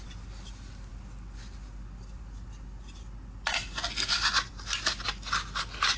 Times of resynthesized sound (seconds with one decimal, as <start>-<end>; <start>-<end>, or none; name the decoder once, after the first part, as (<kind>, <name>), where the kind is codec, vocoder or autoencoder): none